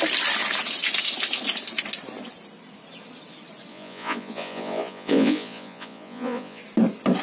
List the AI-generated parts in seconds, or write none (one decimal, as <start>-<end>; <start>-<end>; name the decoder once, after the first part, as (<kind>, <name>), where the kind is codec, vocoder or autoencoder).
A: 3.7-6.6 (vocoder, Vocos)